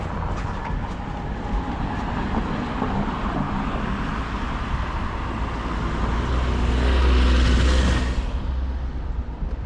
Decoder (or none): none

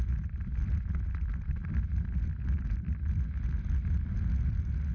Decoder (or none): none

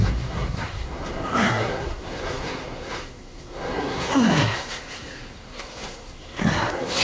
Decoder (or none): codec, SNAC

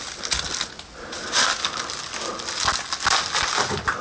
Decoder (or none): none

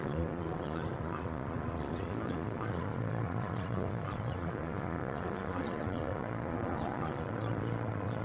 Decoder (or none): vocoder, Vocos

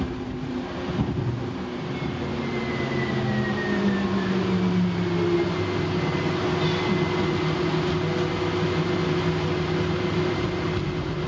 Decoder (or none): none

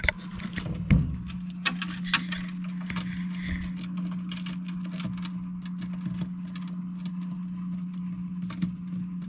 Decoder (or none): none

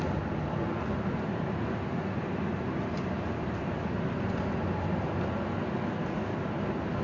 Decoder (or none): none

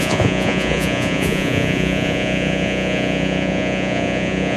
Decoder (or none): vocoder, Vocos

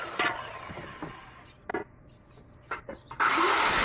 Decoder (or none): vocoder, BigVGAN v2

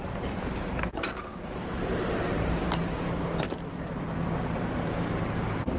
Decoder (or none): vocoder, BigVGAN v2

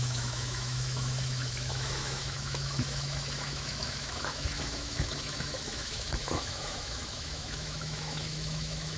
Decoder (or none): autoencoder, DAC-VAE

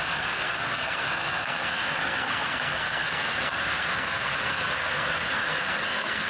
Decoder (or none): codec, SNAC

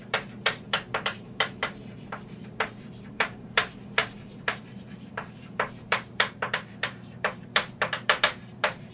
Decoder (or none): vocoder, BigVGAN v2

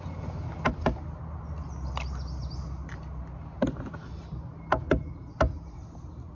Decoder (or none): none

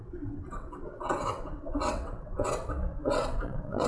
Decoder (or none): vocoder, WaveNeXt